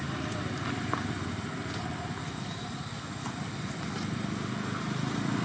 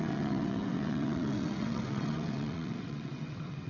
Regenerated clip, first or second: second